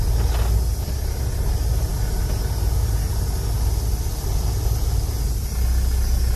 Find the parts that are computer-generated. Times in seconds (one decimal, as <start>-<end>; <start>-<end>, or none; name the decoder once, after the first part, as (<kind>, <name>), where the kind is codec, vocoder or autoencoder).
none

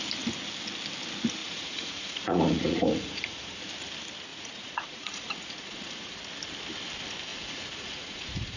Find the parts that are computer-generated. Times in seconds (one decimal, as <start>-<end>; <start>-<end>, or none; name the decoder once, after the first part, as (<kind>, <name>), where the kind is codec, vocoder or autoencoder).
1.4-3.7 (vocoder, Vocos); 4.3-6.2; 7.3-8.6

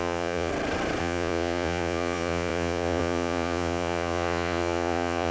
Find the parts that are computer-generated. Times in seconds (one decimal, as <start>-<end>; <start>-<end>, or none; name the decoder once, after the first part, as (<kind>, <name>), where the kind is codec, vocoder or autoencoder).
0.0-0.5 (vocoder, Vocos); 1.0-5.3

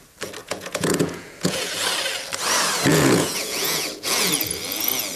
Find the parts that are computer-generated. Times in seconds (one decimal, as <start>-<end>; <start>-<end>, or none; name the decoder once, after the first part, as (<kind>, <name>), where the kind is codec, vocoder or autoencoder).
0.4-1.7 (vocoder, Vocos); 2.9-4.3